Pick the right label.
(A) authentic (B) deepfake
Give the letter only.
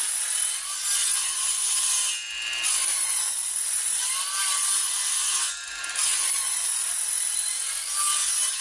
A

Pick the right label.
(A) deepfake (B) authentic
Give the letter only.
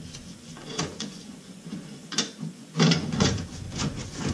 A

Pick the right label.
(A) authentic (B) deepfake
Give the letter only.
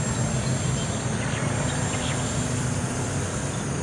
A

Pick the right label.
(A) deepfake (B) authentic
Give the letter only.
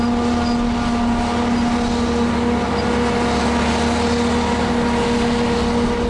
B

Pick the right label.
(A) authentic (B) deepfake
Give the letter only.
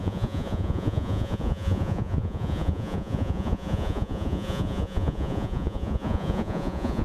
B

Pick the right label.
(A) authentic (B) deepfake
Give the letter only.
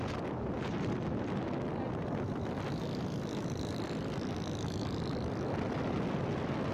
A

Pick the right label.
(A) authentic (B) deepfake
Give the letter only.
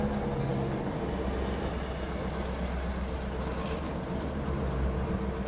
A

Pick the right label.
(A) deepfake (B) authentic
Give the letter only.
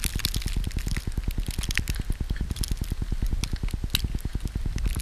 B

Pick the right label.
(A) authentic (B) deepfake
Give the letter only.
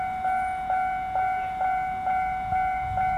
B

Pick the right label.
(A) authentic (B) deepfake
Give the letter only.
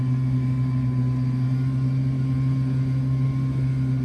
A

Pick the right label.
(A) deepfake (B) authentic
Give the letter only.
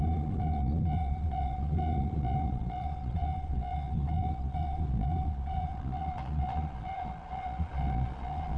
A